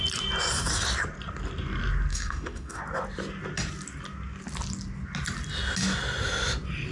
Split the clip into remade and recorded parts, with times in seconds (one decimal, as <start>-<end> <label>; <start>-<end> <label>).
0.0-2.1 recorded; 2.1-2.8 remade; 2.8-6.9 recorded